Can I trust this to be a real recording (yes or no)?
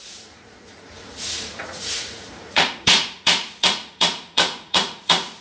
no